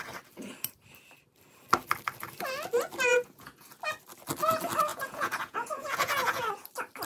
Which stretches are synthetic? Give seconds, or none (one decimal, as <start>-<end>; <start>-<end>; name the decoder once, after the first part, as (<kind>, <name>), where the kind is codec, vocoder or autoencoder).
3.1-3.7 (vocoder, Vocos); 4.9-6.5